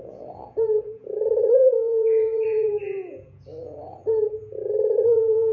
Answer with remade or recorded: remade